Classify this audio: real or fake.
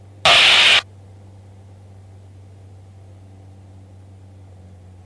real